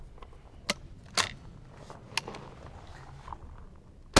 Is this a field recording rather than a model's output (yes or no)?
yes